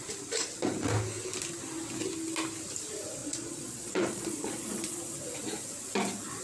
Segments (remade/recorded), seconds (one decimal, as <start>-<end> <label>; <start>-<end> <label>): 0.0-3.2 recorded; 3.2-5.2 remade; 5.2-6.4 recorded